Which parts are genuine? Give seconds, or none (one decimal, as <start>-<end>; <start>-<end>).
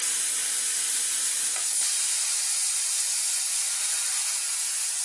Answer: 0.0-5.0